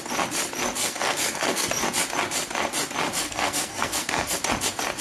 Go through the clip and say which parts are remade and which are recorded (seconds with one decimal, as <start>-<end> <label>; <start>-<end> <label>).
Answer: 0.0-0.8 recorded; 0.8-1.7 remade; 1.7-3.2 recorded; 3.2-4.4 remade; 4.4-5.0 recorded